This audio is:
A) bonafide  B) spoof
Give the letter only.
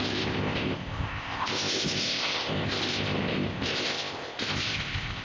B